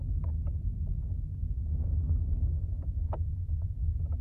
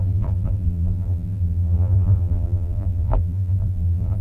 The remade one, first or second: second